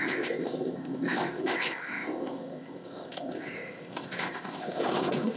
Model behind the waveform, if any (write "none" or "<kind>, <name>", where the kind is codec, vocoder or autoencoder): codec, ZipCodec